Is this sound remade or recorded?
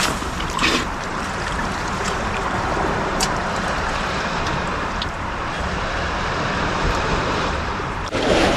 remade